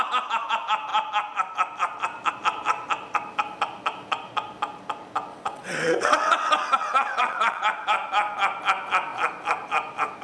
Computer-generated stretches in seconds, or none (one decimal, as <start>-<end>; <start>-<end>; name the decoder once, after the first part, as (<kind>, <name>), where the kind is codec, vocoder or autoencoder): 5.3-7.6 (vocoder, WaveNeXt)